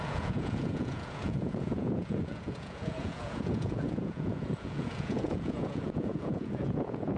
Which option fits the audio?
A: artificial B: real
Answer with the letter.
A